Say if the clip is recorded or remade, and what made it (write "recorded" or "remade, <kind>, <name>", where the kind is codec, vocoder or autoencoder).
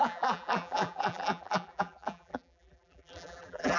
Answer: remade, vocoder, BigVGAN v2